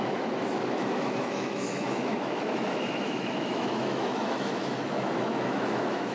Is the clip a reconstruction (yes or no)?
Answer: yes